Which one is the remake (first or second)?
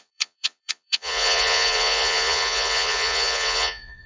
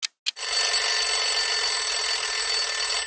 first